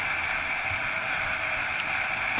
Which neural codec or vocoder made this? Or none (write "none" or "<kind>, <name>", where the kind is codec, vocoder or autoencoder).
none